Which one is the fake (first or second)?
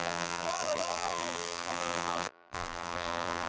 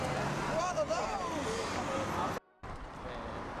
first